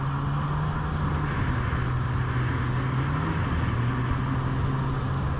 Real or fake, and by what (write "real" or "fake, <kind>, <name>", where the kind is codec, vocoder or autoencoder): real